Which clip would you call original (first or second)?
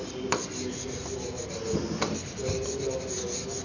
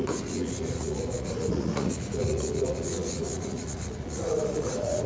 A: first